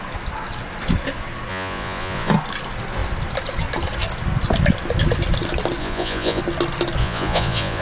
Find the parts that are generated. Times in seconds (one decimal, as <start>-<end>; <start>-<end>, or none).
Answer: 1.5-2.3; 5.8-6.4; 7.0-7.8